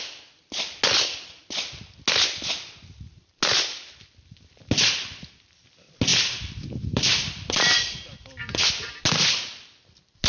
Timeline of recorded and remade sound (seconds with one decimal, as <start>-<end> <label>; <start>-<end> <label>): 0.0-6.1 recorded; 6.1-9.0 remade; 9.0-10.3 recorded